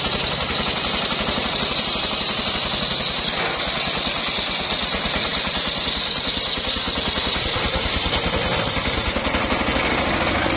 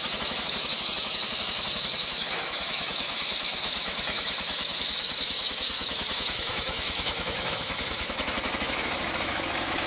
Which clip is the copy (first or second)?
second